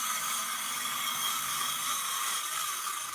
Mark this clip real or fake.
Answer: fake